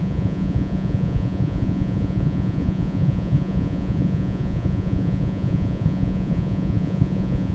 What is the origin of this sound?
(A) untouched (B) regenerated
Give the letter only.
B